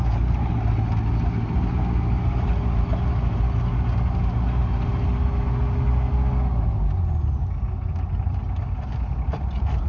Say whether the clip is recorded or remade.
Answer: recorded